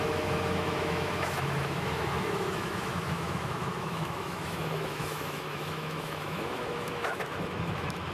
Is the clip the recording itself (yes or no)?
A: no